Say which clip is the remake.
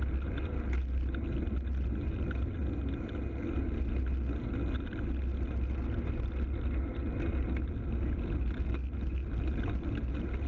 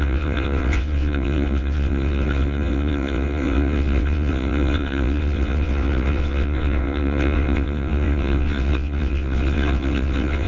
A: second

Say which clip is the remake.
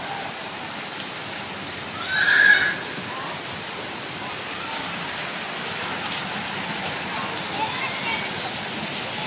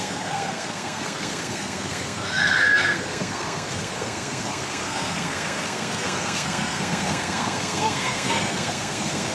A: second